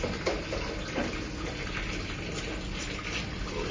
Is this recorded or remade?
recorded